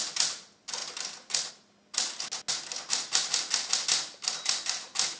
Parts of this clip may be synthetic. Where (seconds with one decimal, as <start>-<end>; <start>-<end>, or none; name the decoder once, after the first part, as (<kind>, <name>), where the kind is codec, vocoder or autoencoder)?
none